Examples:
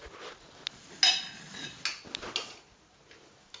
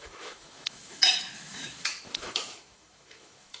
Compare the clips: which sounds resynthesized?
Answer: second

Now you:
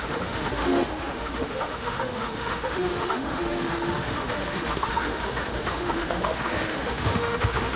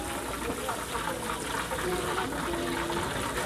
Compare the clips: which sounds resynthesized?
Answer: first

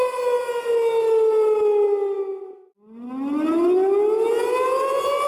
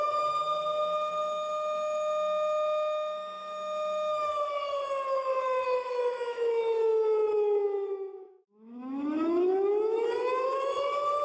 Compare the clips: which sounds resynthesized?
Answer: second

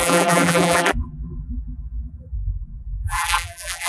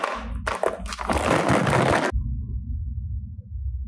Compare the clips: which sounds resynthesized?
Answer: first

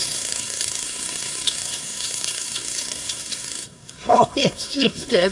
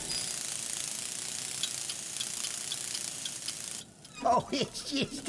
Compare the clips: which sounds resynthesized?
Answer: first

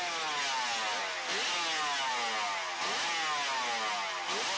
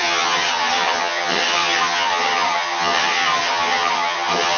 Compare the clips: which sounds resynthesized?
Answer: second